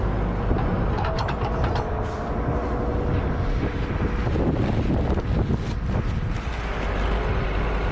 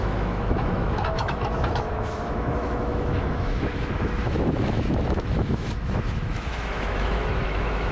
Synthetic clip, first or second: second